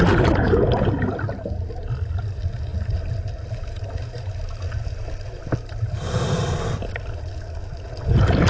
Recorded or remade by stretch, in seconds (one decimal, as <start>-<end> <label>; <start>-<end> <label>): 0.0-8.5 recorded